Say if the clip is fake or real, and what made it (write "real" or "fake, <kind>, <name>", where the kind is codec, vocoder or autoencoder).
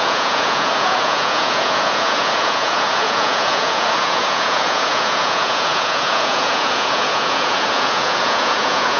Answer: fake, vocoder, Vocos